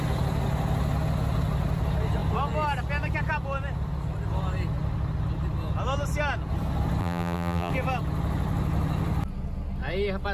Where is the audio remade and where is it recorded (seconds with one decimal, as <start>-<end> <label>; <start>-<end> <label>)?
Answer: 0.0-7.0 recorded; 7.0-7.7 remade; 7.7-10.3 recorded